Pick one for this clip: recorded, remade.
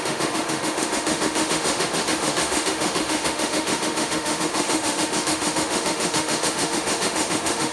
remade